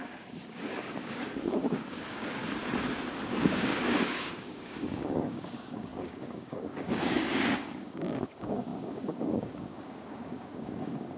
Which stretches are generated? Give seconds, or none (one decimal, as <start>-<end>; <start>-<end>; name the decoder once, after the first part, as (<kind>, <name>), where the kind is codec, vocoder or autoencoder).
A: 0.0-2.4 (codec, DAC); 3.3-11.2